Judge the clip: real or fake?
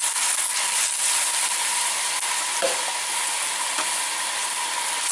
real